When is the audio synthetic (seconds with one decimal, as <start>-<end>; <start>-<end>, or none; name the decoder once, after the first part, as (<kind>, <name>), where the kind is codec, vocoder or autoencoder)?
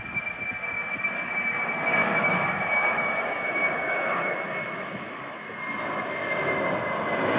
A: 2.0-5.6 (autoencoder, DAC-VAE)